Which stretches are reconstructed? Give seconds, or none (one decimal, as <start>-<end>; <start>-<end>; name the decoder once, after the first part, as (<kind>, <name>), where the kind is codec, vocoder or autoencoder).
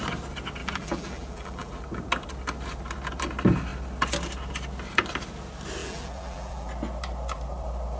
0.6-1.8 (vocoder, BigVGAN v2); 5.8-6.7